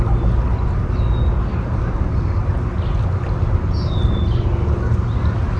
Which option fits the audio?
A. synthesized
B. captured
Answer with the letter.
B